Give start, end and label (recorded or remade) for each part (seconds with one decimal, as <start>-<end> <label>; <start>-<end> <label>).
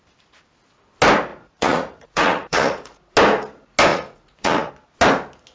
0.0-1.3 recorded; 1.3-3.1 remade; 3.1-3.9 recorded; 3.9-4.7 remade; 4.7-5.5 recorded